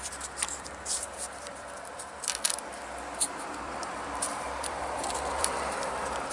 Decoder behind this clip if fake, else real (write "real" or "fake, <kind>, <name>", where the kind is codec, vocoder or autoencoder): fake, vocoder, BigVGAN v2